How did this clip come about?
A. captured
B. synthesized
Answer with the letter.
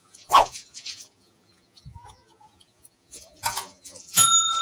B